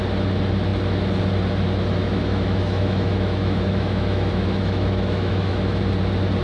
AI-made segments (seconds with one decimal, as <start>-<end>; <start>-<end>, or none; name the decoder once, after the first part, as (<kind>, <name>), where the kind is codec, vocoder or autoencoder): 2.0-5.8 (autoencoder, DAC-VAE)